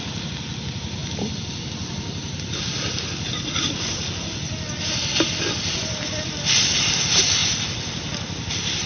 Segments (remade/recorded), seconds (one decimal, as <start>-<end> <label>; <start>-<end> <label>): 0.0-8.9 recorded